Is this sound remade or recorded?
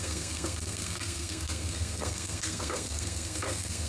remade